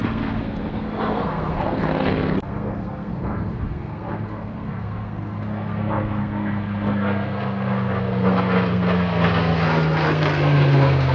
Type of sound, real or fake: fake